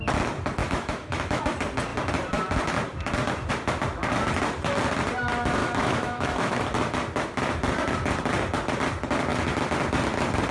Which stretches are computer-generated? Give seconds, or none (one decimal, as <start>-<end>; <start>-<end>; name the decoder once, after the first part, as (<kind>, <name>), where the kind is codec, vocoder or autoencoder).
0.6-1.4 (autoencoder, DAC-VAE); 5.6-6.6